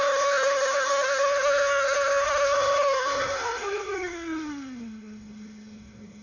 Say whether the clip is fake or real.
fake